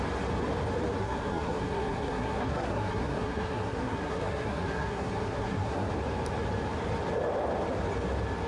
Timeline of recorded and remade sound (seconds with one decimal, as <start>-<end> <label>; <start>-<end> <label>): 0.0-1.0 recorded; 1.0-5.9 remade; 5.9-8.5 recorded